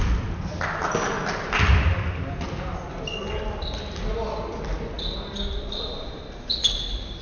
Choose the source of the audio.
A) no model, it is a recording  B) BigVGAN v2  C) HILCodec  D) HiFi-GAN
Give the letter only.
A